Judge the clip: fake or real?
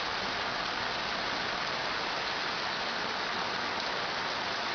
real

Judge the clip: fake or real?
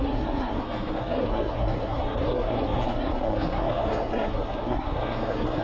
fake